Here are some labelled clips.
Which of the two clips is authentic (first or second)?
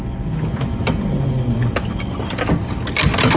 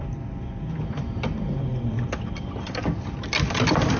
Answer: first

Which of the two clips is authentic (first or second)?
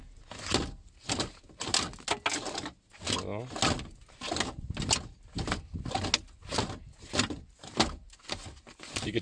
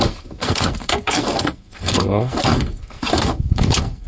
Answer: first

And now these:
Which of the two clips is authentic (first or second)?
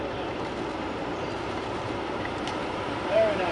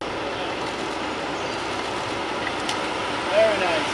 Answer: second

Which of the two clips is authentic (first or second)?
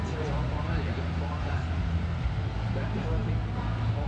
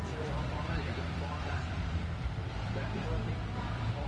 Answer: first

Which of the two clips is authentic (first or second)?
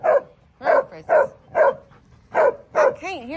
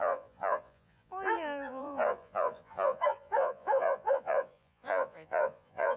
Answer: first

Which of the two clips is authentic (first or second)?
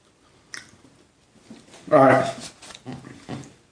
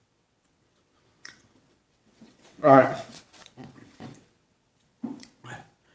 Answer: first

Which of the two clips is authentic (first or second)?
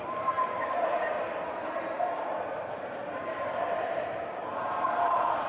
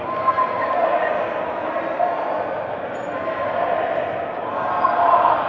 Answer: second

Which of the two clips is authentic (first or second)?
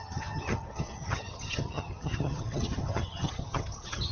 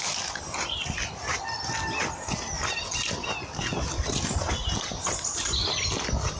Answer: second